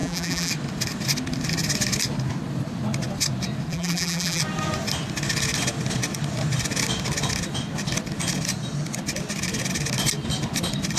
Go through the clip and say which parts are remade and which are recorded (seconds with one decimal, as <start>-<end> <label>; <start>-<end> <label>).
0.0-0.5 remade; 0.5-3.7 recorded; 3.7-4.4 remade; 4.4-11.0 recorded